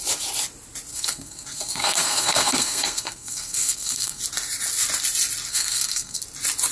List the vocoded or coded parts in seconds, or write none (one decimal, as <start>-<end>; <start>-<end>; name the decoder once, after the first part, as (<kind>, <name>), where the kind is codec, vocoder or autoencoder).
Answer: 0.9-4.2 (codec, SNAC); 5.5-6.2